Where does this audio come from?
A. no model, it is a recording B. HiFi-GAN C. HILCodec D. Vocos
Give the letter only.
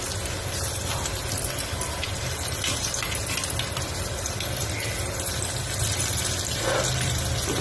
A